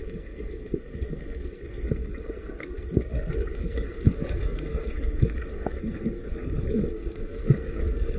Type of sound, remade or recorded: remade